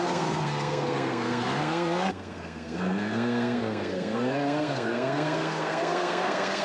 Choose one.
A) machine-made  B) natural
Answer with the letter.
A